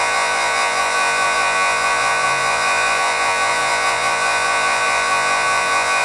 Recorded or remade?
remade